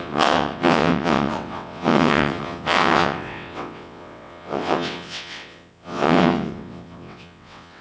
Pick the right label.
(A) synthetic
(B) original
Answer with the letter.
A